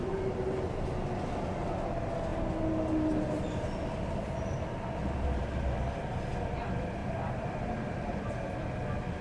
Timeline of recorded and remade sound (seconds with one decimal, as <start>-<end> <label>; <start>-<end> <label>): 0.0-5.4 recorded; 5.4-6.0 remade; 6.0-7.0 recorded; 7.0-8.3 remade; 8.3-9.2 recorded